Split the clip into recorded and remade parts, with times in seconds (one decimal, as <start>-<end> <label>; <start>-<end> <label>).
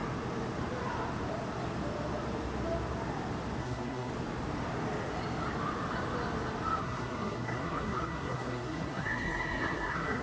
0.0-3.6 recorded; 3.6-4.1 remade; 4.1-6.8 recorded; 6.8-10.2 remade